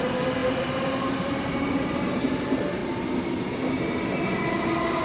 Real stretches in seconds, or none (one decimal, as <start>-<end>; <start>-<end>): 2.8-5.0